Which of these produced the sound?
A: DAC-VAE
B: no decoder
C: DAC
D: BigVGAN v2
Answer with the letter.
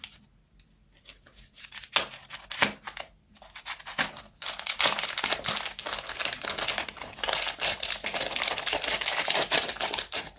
B